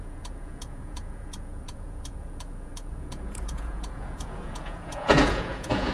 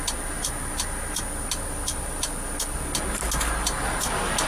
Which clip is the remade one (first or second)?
first